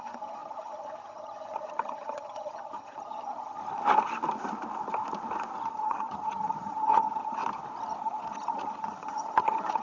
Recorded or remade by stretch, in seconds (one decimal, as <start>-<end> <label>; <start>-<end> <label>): 0.0-3.6 remade; 3.6-5.7 recorded; 5.7-7.4 remade; 7.4-8.0 recorded; 8.0-9.8 remade